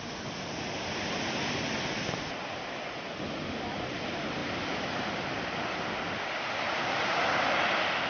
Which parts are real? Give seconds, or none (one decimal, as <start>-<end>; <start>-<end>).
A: 0.0-8.1